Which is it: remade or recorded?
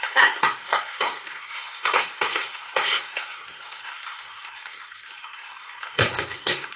remade